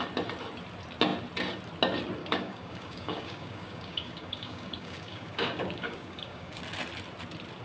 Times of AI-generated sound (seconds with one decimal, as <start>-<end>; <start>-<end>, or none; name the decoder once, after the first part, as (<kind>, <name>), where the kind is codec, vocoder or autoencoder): 2.2-6.6 (codec, DAC)